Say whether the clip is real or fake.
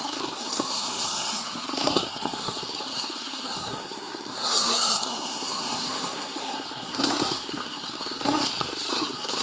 fake